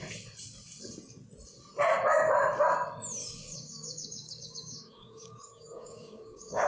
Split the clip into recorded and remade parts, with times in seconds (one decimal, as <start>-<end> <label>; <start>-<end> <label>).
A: 0.0-3.2 recorded; 3.2-6.7 remade